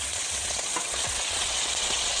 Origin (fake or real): fake